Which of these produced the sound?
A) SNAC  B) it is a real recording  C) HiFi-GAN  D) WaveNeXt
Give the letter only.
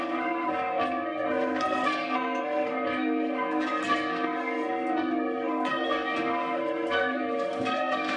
A